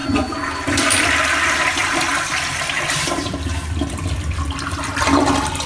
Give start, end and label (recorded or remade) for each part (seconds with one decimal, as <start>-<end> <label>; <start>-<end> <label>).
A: 0.0-1.2 remade; 1.2-1.8 recorded; 1.8-5.2 remade; 5.2-5.7 recorded